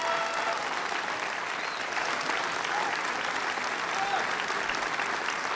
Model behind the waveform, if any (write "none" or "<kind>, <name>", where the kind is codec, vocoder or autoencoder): none